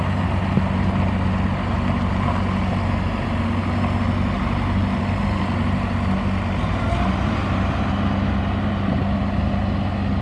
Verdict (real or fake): real